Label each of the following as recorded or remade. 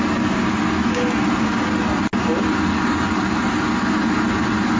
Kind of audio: recorded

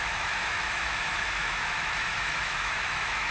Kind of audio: remade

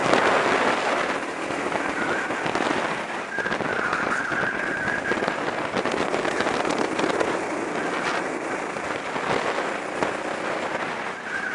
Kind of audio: recorded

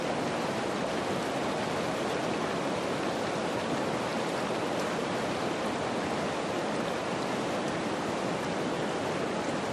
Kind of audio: recorded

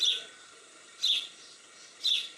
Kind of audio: recorded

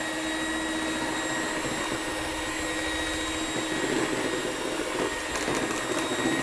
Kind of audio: recorded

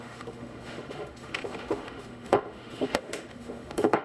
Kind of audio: remade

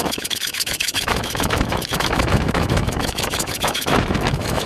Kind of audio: remade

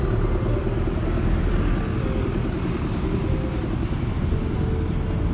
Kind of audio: recorded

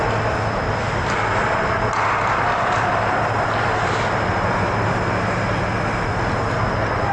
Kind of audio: recorded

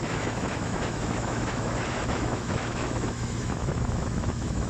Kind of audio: remade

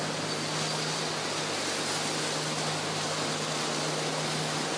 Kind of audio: recorded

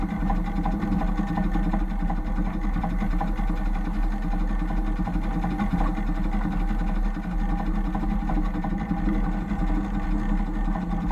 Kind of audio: recorded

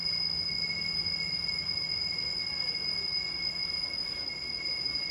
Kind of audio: recorded